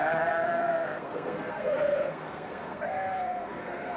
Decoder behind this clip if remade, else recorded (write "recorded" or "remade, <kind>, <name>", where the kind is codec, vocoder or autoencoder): remade, codec, SNAC